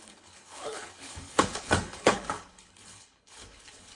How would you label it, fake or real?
fake